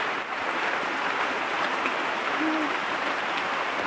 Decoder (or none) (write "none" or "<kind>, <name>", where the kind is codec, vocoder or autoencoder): vocoder, BigVGAN v2